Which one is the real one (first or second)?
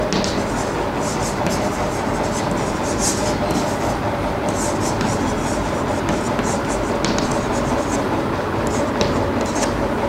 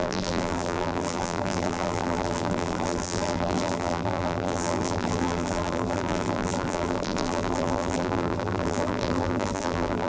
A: first